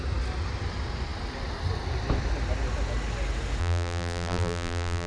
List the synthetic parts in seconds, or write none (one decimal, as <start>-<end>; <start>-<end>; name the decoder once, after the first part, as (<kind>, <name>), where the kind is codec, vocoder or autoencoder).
3.6-5.1 (vocoder, BigVGAN v2)